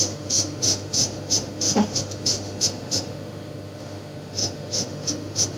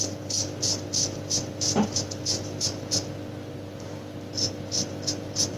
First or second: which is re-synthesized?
first